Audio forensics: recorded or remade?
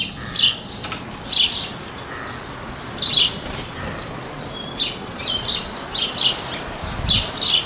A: recorded